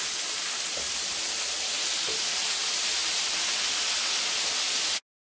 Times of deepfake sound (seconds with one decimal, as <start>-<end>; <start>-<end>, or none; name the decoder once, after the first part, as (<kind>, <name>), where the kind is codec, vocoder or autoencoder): none